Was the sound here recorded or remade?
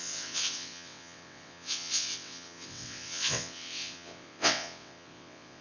remade